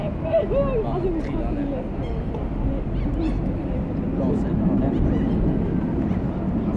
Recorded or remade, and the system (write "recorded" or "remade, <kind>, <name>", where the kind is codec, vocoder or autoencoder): recorded